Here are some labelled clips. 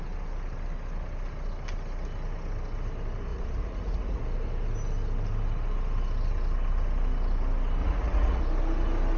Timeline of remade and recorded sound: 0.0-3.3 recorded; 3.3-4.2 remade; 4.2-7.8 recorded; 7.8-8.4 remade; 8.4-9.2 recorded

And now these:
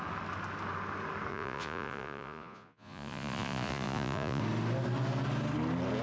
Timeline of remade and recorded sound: 0.0-1.3 recorded; 1.3-4.4 remade; 4.4-6.0 recorded

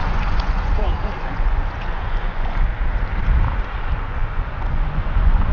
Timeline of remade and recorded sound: 0.0-2.7 remade; 2.7-3.8 recorded; 3.8-5.5 remade

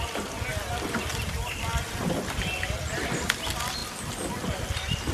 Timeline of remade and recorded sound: 0.0-5.1 recorded

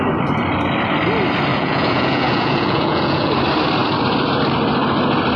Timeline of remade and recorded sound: 0.0-1.5 recorded; 1.5-3.3 remade; 3.3-5.4 recorded

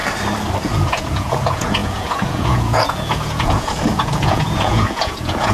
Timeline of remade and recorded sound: 0.0-0.6 recorded; 0.6-5.5 remade

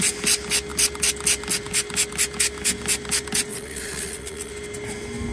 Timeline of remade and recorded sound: 0.0-3.5 recorded; 3.5-4.5 remade; 4.5-5.3 recorded